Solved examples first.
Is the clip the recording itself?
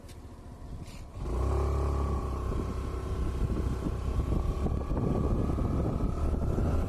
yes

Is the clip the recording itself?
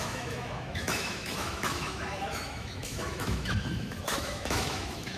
no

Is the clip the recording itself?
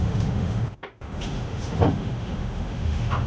no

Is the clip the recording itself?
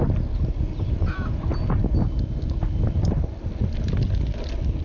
yes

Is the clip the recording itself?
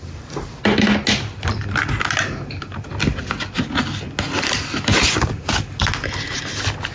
yes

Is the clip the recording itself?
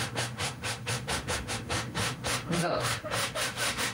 no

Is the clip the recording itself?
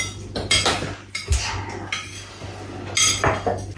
yes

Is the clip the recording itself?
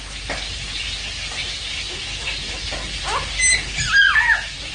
yes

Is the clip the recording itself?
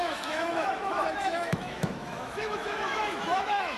no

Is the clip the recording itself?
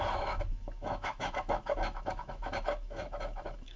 no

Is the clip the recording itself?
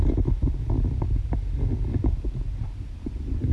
yes